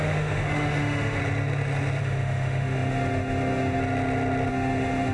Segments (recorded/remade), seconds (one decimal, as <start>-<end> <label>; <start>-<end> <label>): 0.0-1.2 remade; 1.2-2.0 recorded; 2.0-3.8 remade; 3.8-4.5 recorded; 4.5-5.1 remade